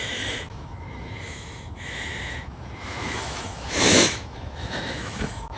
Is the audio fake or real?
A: fake